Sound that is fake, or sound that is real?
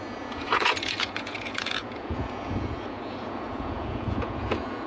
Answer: fake